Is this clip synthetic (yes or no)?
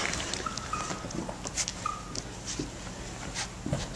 no